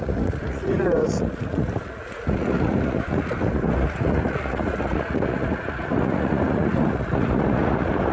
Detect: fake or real fake